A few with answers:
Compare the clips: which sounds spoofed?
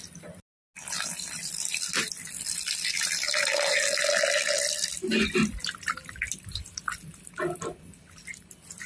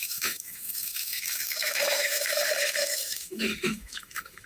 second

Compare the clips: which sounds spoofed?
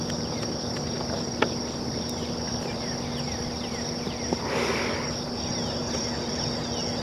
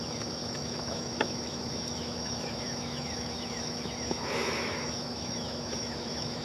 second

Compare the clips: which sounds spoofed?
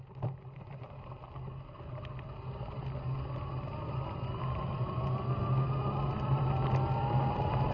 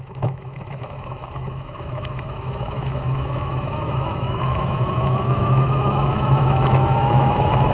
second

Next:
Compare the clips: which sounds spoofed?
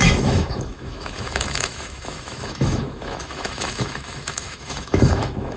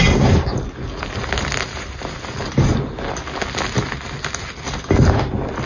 first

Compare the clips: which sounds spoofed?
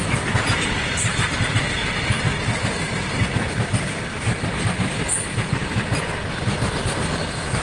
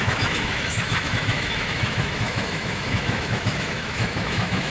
second